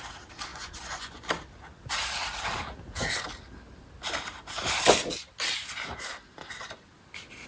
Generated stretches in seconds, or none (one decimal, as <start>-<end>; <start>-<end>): 0.5-1.2